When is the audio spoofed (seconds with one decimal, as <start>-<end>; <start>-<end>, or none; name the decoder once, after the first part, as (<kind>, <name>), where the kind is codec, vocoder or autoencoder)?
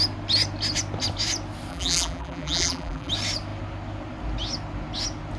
1.7-3.1 (vocoder, BigVGAN v2)